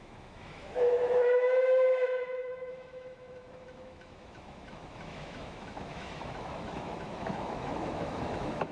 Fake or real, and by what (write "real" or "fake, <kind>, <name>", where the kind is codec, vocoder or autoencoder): fake, autoencoder, DAC-VAE